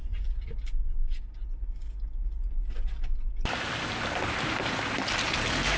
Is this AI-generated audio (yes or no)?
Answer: no